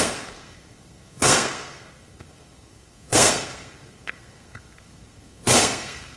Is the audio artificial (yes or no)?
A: yes